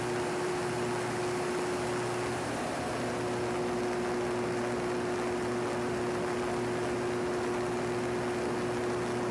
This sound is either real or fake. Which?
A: real